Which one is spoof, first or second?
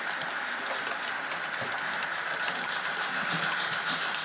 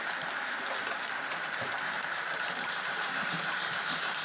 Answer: second